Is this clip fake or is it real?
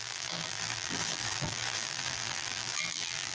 fake